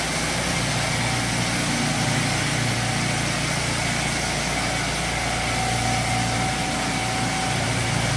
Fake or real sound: real